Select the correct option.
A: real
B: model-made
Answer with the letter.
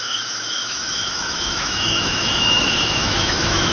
B